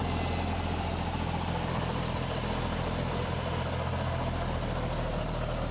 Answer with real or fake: real